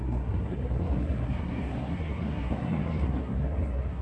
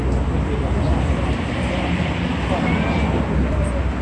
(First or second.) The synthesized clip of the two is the first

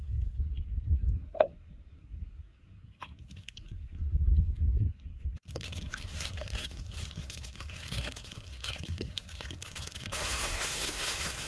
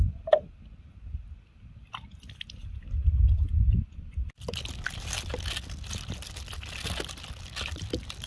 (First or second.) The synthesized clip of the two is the first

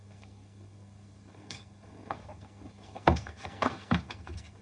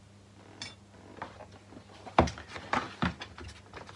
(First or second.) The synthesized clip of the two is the first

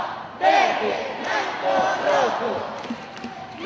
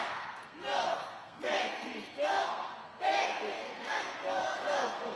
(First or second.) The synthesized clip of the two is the second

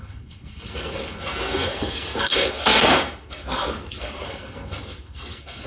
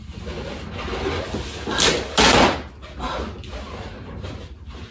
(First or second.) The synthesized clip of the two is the first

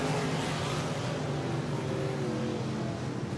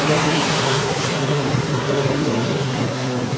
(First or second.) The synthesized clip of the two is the second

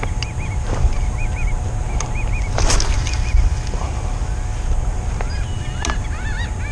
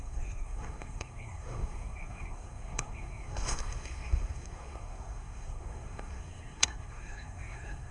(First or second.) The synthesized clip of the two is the second